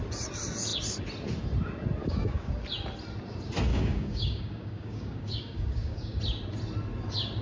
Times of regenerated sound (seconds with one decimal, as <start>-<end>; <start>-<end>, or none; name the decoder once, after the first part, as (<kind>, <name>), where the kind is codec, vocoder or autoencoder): 2.0-2.5 (codec, DAC); 3.7-6.2